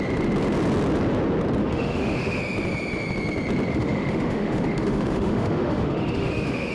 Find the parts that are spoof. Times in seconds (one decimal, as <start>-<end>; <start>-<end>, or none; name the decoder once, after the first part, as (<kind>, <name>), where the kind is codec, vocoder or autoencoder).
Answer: 1.6-2.4 (autoencoder, DAC-VAE); 3.7-6.7